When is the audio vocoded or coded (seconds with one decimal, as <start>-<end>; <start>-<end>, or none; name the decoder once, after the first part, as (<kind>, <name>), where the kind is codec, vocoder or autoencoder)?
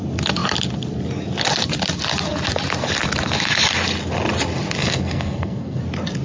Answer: 4.8-5.8 (codec, SNAC)